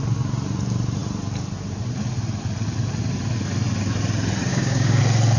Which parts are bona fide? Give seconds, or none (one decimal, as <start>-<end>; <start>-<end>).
0.0-4.5; 5.0-5.4